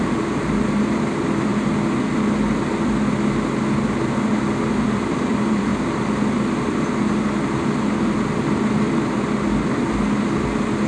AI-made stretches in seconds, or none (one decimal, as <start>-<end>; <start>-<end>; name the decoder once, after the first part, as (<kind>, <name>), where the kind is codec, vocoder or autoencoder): 0.0-1.5 (vocoder, BigVGAN v2); 4.8-5.7